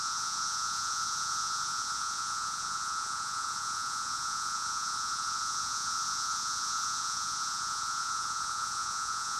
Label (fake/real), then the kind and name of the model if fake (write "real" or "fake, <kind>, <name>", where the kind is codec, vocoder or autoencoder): fake, vocoder, Vocos